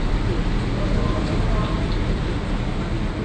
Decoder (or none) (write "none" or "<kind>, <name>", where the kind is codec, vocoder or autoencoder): none